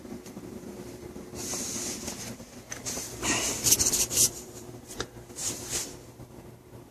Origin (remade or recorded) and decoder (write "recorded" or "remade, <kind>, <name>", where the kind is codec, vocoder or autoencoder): remade, vocoder, BigVGAN v2